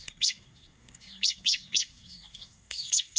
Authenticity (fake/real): fake